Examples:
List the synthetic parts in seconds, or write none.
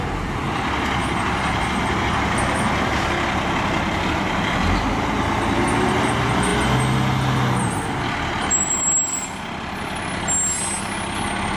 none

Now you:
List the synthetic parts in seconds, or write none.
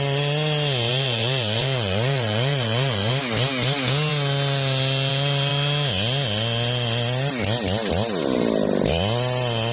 0.9-3.1 (vocoder, Vocos)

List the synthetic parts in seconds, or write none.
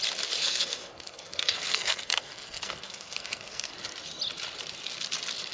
0.4-3.7 (codec, SNAC)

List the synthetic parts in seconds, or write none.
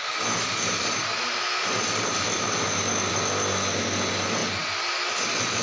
none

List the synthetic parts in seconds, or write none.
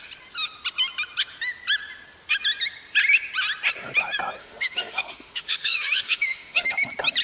4.4-6.7 (autoencoder, DAC-VAE)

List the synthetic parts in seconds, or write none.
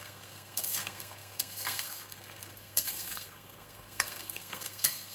0.0-5.1 (codec, SNAC)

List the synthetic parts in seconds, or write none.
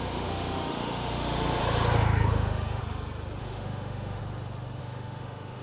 0.0-1.6 (autoencoder, DAC-VAE); 2.3-2.8; 3.4-4.2; 4.8-5.6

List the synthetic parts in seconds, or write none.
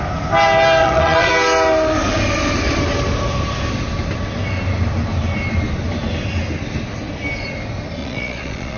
0.8-1.3 (vocoder, Vocos); 8.0-8.8